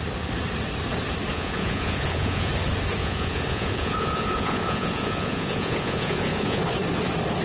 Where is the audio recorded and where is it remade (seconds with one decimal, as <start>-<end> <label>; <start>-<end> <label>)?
0.0-1.3 recorded; 1.3-2.5 remade; 2.5-3.0 recorded; 3.0-6.6 remade; 6.6-7.4 recorded